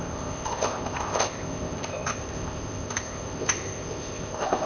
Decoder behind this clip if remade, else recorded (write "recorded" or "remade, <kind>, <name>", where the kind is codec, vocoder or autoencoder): remade, codec, ZipCodec